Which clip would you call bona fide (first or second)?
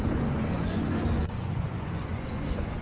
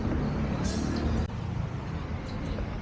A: second